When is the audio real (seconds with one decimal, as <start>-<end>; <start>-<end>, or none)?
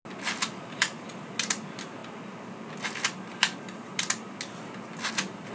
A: 0.0-5.5